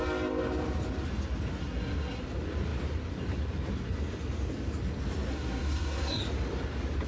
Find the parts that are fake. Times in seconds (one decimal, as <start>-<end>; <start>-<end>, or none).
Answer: 1.6-2.2; 5.3-6.2